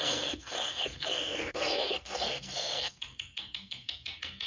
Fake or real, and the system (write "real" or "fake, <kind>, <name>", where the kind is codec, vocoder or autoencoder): fake, codec, SNAC